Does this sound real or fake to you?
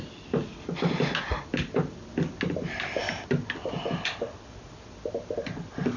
real